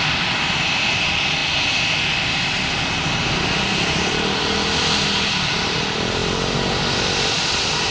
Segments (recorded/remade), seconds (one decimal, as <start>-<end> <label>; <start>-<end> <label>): 0.0-1.4 remade; 1.4-4.1 recorded; 4.1-7.9 remade